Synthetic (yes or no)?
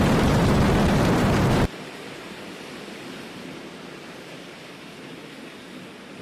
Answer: yes